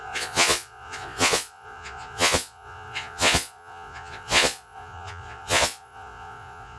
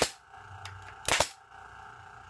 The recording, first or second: second